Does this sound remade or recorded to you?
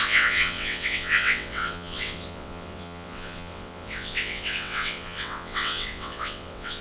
remade